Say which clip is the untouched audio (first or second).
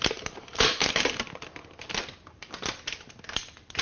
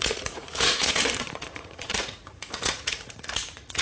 first